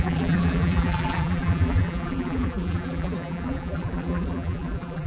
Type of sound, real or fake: fake